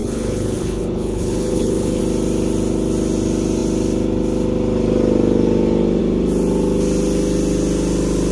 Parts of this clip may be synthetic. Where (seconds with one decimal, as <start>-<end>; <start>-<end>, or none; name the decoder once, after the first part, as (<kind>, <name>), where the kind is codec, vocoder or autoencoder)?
0.0-2.0 (codec, HILCodec)